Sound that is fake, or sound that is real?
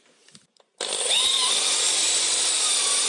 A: real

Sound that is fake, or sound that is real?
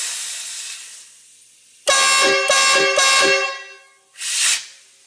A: real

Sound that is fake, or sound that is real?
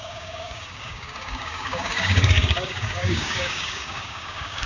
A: fake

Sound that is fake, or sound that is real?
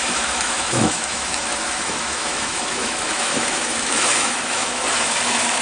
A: fake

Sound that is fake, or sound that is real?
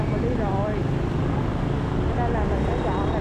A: real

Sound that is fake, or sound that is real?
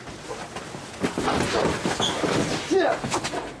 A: real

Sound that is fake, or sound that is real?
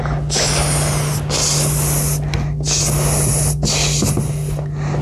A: real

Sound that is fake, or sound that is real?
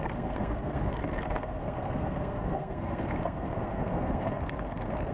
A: fake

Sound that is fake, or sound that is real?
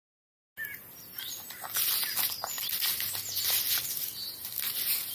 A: real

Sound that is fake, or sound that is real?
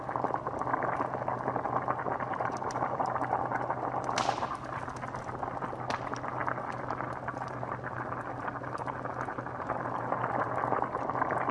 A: real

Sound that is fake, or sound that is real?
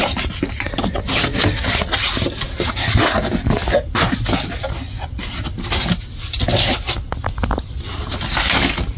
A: real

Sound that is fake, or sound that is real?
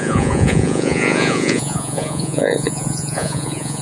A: fake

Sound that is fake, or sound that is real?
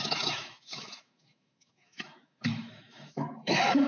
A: fake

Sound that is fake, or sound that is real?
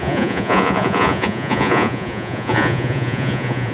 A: fake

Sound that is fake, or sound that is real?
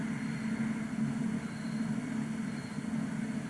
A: real